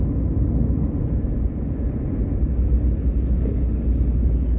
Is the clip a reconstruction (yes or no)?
no